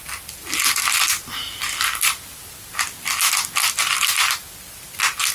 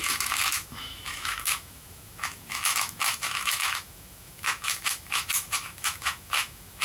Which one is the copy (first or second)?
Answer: second